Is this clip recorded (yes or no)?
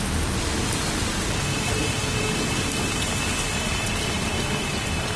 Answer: yes